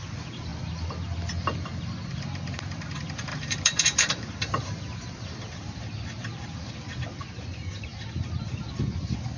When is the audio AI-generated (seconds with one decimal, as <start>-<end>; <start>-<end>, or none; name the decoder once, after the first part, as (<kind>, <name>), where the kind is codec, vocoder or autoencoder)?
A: 3.3-6.7 (vocoder, BigVGAN v2)